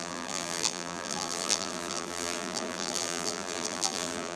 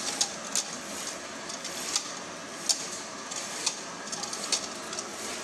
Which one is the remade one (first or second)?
first